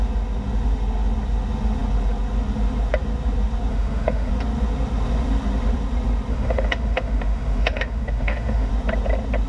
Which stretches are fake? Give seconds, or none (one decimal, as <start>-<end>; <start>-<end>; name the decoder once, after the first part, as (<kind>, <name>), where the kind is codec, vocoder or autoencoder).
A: 3.7-4.3 (autoencoder, DAC-VAE); 6.3-8.7

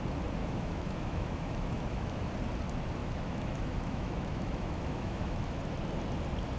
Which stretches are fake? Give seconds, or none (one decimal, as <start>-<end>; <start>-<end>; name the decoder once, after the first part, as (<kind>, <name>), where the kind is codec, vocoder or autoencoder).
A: 0.4-2.3 (autoencoder, DAC-VAE); 3.0-5.6

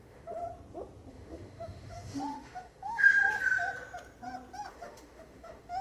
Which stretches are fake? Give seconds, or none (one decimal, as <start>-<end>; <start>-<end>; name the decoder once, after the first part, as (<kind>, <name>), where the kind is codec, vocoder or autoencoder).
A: 0.0-0.4 (autoencoder, DAC-VAE); 1.1-3.2; 4.7-5.8

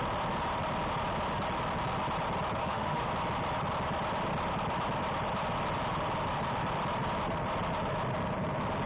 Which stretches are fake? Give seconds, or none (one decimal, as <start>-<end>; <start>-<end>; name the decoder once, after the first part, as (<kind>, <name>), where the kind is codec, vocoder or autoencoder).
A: 2.6-3.1 (autoencoder, DAC-VAE)